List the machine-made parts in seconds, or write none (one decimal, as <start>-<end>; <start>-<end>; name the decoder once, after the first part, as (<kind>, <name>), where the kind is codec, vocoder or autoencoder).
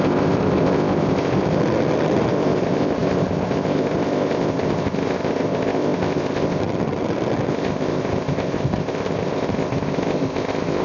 0.0-1.6 (codec, ZipCodec); 2.3-6.6; 7.5-10.8